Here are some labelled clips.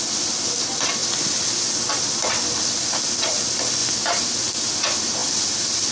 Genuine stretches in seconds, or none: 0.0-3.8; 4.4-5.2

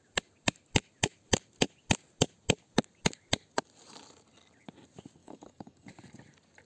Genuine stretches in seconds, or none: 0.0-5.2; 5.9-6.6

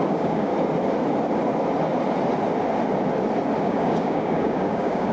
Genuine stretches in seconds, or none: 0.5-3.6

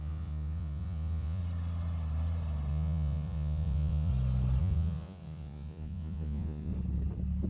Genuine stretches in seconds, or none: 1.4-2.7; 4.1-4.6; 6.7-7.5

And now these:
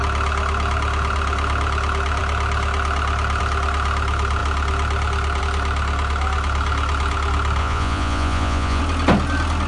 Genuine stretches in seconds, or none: 0.0-7.6; 8.8-9.7